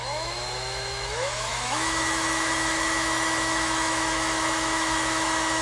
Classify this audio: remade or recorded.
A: remade